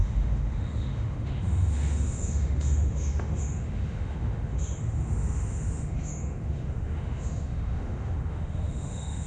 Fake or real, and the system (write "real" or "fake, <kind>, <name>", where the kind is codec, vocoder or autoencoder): fake, autoencoder, DAC-VAE